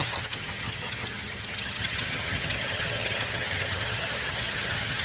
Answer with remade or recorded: remade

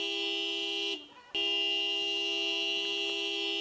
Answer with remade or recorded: recorded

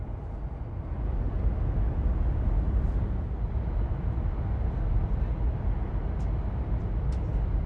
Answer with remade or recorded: recorded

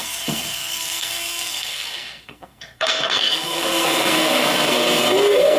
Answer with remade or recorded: remade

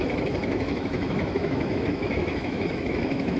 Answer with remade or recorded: remade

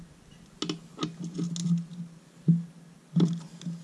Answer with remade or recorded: recorded